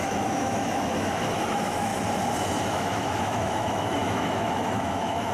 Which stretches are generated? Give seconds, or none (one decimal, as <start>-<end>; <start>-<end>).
0.0-1.9; 2.7-5.3